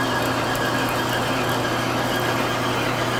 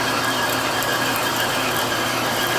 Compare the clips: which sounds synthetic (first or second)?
second